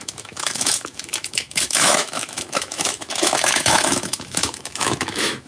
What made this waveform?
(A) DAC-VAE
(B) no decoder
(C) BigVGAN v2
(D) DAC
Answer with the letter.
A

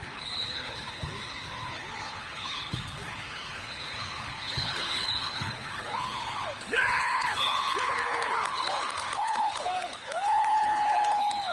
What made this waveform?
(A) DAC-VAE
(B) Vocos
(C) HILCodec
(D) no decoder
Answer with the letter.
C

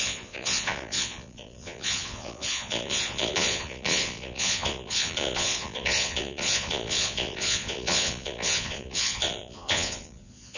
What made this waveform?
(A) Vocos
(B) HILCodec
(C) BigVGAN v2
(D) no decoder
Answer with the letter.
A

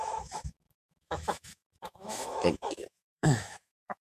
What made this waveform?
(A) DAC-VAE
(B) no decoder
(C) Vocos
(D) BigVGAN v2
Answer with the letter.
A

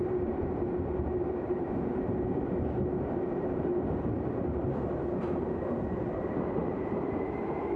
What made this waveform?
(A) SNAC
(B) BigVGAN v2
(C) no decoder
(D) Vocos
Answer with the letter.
B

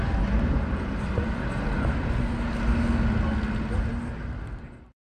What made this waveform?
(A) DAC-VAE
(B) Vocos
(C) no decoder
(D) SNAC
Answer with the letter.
C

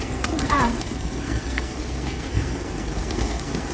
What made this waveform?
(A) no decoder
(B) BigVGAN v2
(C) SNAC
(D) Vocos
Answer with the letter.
C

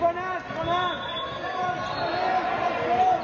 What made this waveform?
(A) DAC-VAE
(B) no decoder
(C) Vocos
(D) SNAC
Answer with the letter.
B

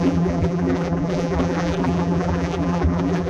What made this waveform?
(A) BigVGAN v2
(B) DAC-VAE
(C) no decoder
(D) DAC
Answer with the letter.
A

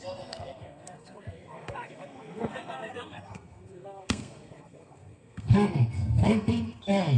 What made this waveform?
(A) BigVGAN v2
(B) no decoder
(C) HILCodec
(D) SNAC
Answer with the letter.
D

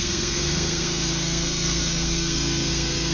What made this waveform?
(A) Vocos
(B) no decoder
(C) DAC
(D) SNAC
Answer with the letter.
D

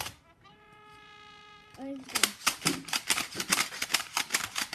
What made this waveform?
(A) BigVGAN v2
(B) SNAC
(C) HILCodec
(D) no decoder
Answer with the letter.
A